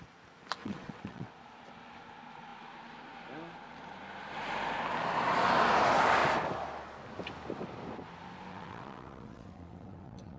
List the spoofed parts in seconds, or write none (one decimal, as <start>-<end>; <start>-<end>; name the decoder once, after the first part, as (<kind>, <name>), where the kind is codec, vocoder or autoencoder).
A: 0.6-1.3 (vocoder, WaveNeXt); 8.5-10.4